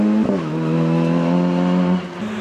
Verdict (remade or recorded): recorded